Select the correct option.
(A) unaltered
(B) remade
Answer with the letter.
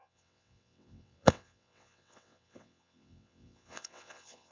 B